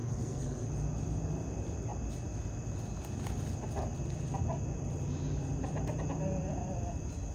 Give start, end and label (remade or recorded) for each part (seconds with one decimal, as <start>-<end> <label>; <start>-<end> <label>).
0.0-0.7 remade; 0.7-7.3 recorded